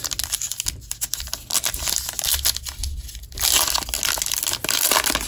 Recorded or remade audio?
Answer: recorded